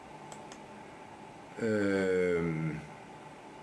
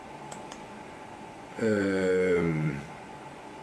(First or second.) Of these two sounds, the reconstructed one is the second